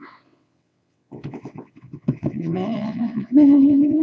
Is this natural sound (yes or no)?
no